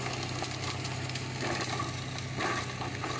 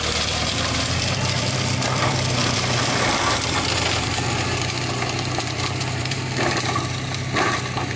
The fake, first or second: second